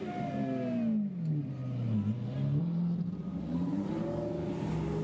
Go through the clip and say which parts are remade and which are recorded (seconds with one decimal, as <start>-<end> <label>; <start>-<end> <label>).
0.0-3.3 recorded; 3.3-3.9 remade; 3.9-5.0 recorded